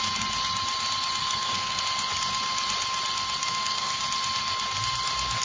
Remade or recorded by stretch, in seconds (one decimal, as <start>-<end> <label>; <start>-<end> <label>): 0.0-1.2 recorded; 1.2-1.8 remade; 1.8-3.4 recorded; 3.4-4.0 remade; 4.0-5.4 recorded